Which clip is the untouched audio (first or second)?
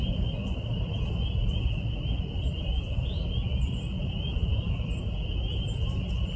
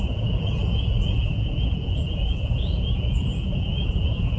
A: first